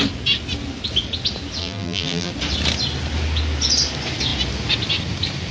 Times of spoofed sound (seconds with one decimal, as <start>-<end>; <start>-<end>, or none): 1.6-2.3